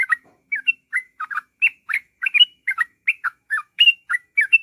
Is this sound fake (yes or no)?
yes